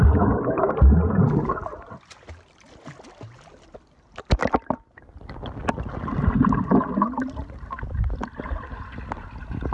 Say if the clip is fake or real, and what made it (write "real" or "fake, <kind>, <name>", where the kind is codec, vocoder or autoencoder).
real